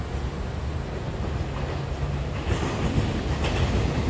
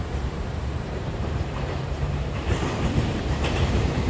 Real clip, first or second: first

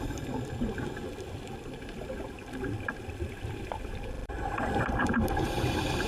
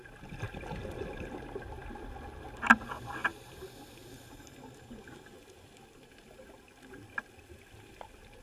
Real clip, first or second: second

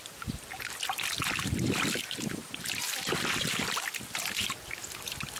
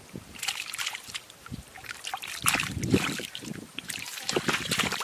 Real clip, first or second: first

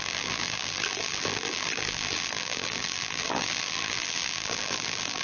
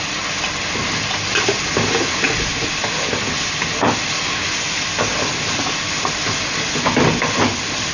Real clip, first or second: second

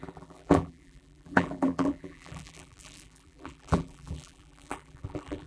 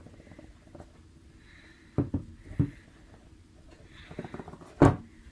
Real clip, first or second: second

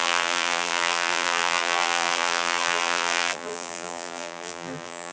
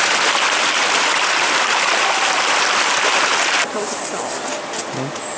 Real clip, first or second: second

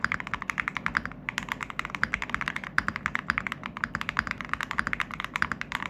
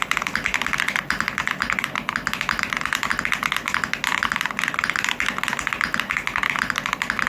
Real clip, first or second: second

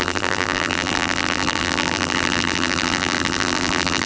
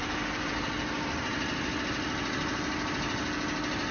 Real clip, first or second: second